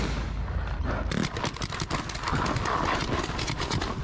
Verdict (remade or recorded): recorded